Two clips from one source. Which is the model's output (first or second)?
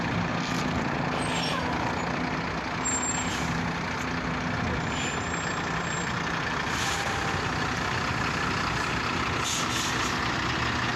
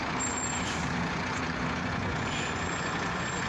second